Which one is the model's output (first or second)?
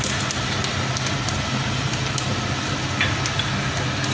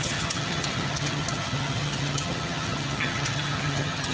second